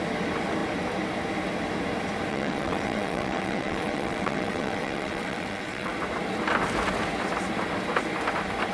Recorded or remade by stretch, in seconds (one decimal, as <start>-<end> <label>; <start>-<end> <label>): 0.0-2.3 recorded; 2.3-5.9 remade; 5.9-8.7 recorded